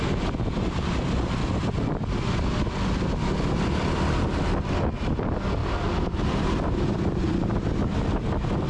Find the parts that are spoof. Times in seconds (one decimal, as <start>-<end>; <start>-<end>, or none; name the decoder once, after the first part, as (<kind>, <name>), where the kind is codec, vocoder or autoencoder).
5.6-8.7 (vocoder, BigVGAN v2)